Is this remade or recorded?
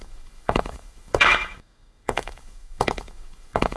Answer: remade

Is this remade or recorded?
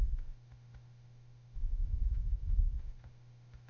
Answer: remade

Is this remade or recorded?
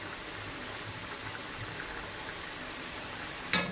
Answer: recorded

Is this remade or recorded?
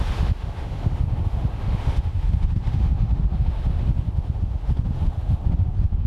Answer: remade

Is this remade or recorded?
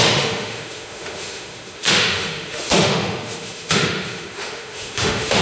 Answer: remade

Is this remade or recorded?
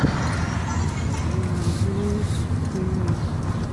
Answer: recorded